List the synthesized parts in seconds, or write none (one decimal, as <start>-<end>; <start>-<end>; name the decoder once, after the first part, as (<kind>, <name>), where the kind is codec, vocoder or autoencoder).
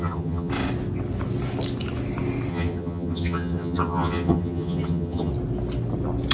0.0-0.5 (vocoder, HiFi-GAN); 2.5-5.3